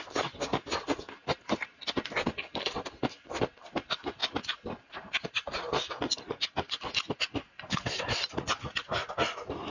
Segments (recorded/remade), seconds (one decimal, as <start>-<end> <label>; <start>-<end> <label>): 0.0-9.7 recorded